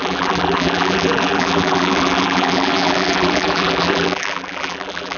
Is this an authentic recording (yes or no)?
no